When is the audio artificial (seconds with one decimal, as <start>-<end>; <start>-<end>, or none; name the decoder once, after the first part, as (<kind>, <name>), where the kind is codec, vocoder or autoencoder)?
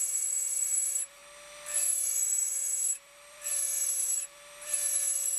0.0-1.2 (vocoder, BigVGAN v2); 2.0-5.4